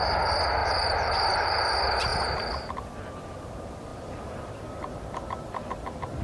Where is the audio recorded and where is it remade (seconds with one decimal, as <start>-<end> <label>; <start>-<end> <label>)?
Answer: 0.0-0.6 recorded; 0.6-1.6 remade; 1.6-3.9 recorded; 3.9-4.6 remade; 4.6-6.2 recorded